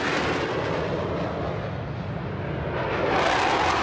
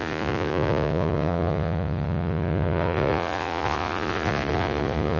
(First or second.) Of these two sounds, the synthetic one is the second